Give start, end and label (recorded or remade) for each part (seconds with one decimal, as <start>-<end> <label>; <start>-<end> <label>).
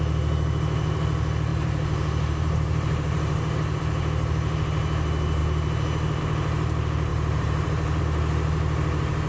0.0-1.5 recorded; 1.5-3.8 remade; 3.8-7.1 recorded; 7.1-8.0 remade; 8.0-9.3 recorded